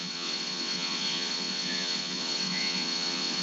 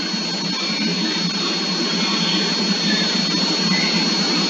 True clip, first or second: second